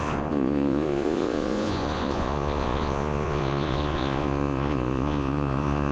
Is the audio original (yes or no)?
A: no